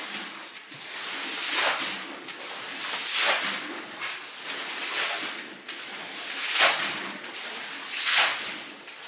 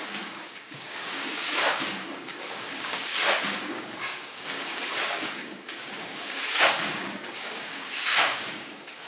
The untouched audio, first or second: first